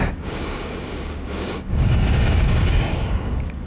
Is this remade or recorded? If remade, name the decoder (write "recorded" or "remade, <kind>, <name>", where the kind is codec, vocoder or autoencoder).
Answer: remade, codec, DAC